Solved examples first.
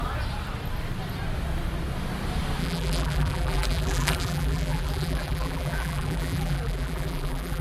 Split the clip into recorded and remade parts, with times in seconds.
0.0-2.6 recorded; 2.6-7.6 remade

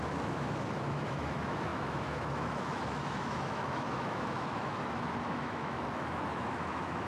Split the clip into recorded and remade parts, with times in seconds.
0.0-7.1 remade

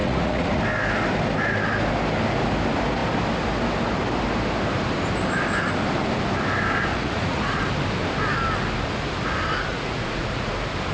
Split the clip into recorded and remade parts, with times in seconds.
0.0-0.6 remade; 0.6-6.9 recorded; 6.9-7.6 remade; 7.6-9.7 recorded; 9.7-10.5 remade; 10.5-10.9 recorded